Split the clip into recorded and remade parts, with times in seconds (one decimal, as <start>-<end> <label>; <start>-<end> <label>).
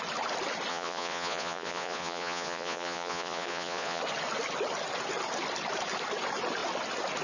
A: 0.0-0.7 recorded; 0.7-4.0 remade; 4.0-7.2 recorded